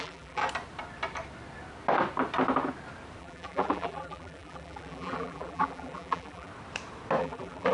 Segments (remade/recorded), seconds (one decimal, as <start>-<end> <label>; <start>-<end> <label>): 0.0-0.4 remade; 0.4-3.2 recorded; 3.2-6.5 remade; 6.5-7.2 recorded; 7.2-7.7 remade